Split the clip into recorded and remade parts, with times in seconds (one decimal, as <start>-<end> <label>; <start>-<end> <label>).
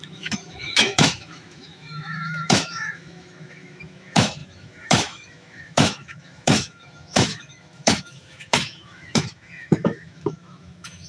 0.0-11.1 remade